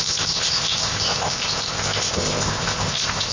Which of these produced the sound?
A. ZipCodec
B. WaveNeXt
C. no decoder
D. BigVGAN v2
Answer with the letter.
A